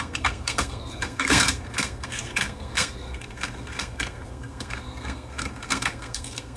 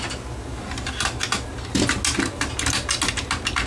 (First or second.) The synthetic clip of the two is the first